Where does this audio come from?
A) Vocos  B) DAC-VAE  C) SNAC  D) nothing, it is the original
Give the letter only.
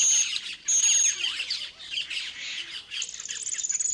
D